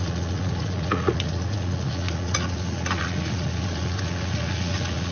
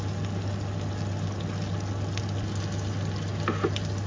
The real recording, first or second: second